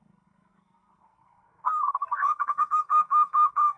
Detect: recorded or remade remade